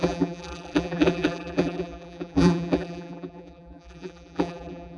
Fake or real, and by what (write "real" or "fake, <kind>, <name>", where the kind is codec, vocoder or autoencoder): fake, vocoder, BigVGAN v2